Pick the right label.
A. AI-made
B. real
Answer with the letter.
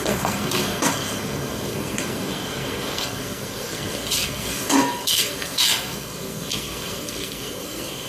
A